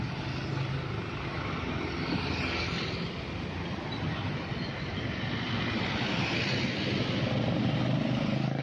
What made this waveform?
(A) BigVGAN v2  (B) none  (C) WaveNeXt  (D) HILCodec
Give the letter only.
B